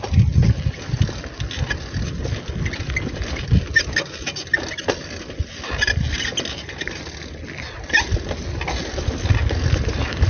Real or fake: real